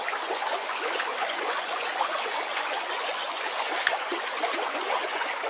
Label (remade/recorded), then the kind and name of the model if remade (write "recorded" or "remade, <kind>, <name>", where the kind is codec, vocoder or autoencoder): remade, vocoder, Vocos